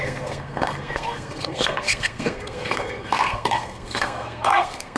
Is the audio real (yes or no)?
no